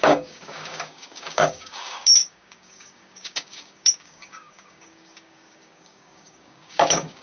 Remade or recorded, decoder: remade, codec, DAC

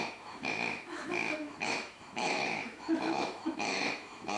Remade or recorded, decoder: remade, autoencoder, DAC-VAE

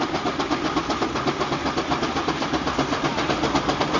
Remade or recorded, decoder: recorded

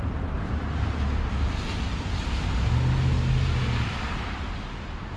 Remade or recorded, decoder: recorded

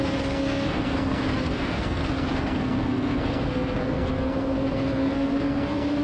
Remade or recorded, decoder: remade, codec, SNAC